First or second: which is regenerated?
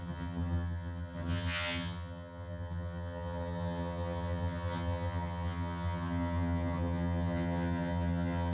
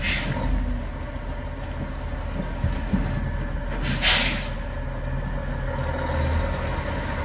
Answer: first